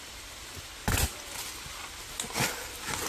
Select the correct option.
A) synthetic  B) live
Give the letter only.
B